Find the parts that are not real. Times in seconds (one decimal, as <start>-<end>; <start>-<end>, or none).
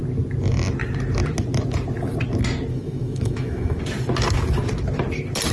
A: 2.7-3.8